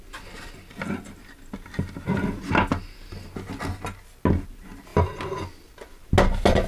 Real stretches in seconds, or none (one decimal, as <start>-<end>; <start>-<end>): 0.0-6.7